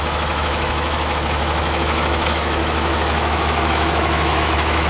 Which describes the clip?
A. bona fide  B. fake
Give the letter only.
B